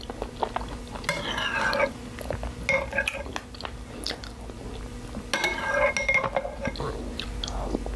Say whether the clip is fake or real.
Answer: real